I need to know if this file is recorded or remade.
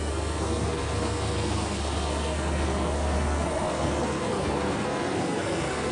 remade